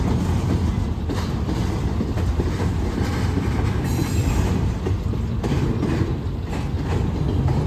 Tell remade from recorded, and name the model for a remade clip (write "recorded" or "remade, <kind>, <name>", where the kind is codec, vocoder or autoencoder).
recorded